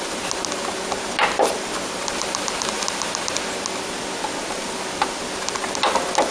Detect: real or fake real